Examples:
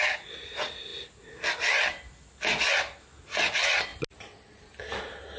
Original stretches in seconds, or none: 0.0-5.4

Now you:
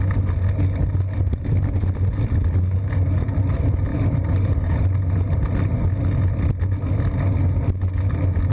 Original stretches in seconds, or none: 0.0-3.9; 4.8-8.5

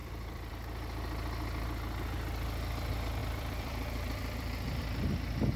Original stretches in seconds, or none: 0.5-3.2; 4.8-5.6

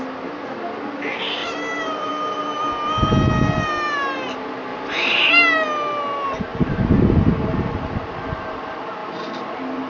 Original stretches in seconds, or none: 0.0-1.4; 2.1-4.7; 5.3-6.5; 7.1-9.9

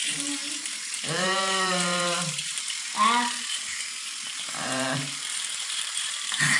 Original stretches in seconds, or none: none